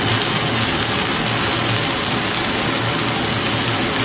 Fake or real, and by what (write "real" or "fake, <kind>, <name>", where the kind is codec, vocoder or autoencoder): real